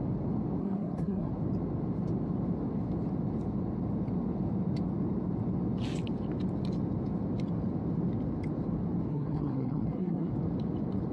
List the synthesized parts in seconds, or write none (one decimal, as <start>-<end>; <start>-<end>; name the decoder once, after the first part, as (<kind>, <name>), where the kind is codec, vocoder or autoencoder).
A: 0.6-1.3 (codec, SNAC); 9.1-10.3